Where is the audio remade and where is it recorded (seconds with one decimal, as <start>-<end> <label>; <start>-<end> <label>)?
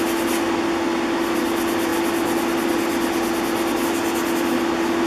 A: 0.0-5.1 recorded